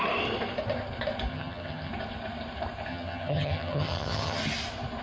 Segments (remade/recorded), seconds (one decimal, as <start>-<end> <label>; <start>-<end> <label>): 0.0-1.3 recorded; 1.3-1.9 remade; 1.9-2.9 recorded; 2.9-4.4 remade; 4.4-5.0 recorded